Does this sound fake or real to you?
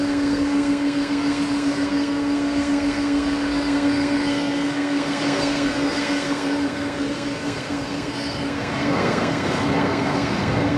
fake